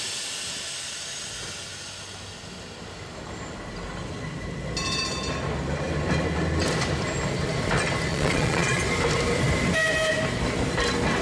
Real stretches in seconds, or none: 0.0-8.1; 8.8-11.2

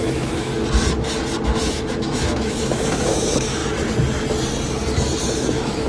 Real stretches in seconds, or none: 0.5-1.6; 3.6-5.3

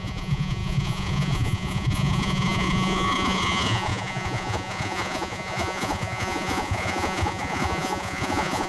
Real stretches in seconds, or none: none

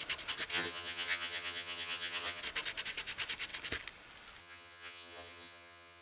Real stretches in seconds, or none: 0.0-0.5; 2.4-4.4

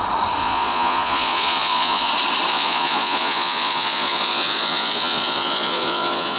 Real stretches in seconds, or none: 0.0-0.4; 2.1-2.5

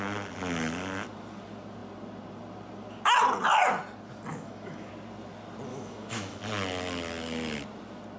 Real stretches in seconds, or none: 0.0-4.3; 4.9-5.7; 6.4-8.2

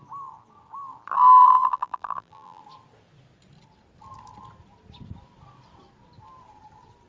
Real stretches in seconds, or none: 0.0-1.4; 2.6-7.1

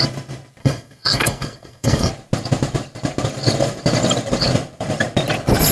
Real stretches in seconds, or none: 0.0-0.6; 2.1-5.7